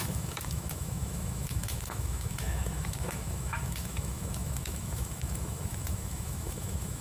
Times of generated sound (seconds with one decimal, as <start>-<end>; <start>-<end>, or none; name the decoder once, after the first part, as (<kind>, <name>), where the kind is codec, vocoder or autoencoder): 0.0-7.0 (autoencoder, DAC-VAE)